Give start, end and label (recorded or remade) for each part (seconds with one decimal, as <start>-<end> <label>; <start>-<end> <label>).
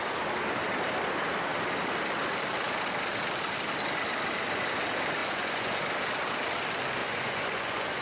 0.0-5.2 recorded; 5.2-5.8 remade; 5.8-7.0 recorded; 7.0-8.0 remade